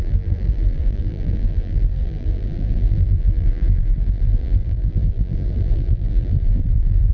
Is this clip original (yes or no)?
no